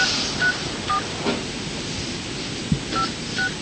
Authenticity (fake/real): real